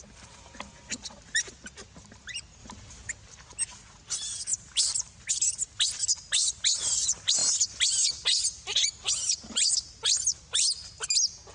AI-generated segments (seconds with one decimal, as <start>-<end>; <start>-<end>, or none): none